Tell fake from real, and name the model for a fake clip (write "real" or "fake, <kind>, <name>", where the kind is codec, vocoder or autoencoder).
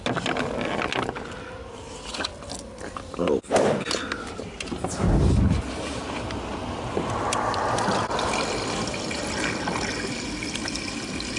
real